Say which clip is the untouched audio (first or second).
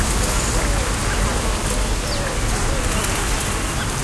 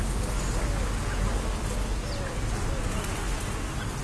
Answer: second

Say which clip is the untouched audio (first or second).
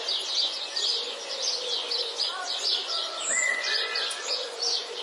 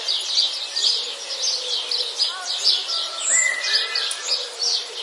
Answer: second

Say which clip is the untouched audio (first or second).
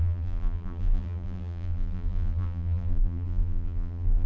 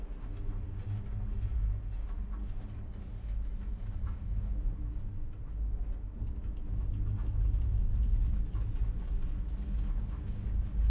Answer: second